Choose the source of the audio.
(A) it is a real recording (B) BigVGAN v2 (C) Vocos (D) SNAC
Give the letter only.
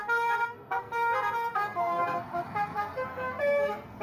D